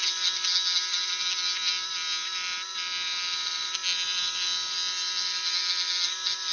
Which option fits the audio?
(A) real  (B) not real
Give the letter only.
A